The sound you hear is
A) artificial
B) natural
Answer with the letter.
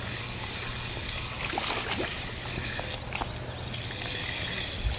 B